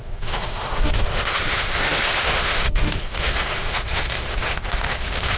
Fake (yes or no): yes